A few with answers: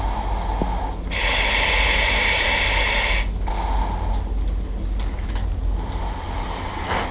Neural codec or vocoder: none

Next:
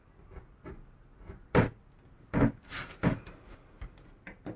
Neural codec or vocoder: none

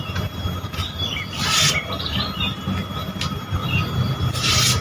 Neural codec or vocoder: none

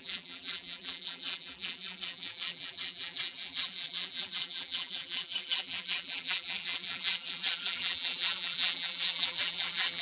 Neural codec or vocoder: vocoder, BigVGAN v2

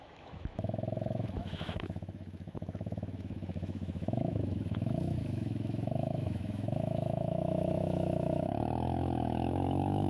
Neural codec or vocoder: autoencoder, DAC-VAE